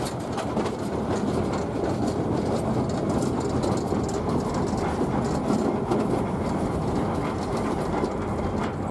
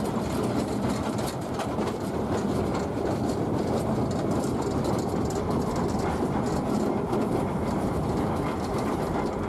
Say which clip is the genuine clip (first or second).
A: first